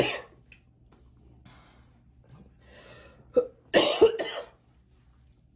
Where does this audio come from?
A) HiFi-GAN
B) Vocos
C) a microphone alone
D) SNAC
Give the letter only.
C